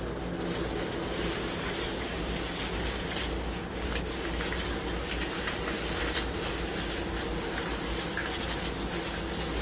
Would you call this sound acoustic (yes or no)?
yes